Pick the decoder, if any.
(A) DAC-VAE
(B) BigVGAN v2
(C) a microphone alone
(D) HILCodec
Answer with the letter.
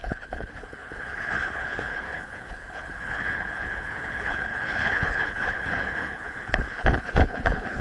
D